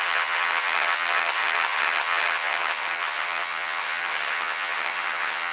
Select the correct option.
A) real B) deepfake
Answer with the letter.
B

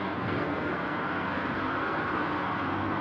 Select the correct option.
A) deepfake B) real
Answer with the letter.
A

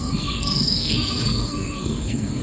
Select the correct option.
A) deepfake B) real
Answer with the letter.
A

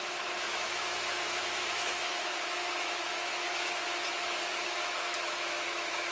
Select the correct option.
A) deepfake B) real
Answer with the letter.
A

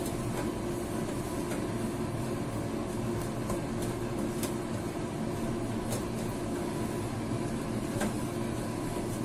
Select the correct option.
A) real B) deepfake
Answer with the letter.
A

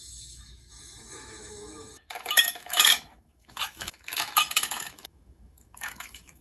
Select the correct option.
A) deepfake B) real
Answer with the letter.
A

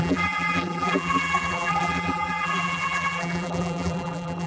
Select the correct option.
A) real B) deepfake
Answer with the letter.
B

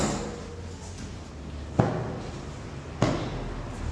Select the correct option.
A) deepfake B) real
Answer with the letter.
B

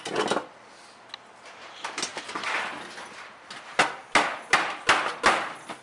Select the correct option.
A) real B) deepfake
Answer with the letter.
A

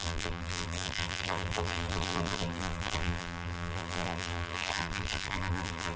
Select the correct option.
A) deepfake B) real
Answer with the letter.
A